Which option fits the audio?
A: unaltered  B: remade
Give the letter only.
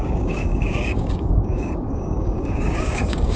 B